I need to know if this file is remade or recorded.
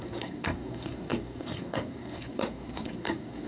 remade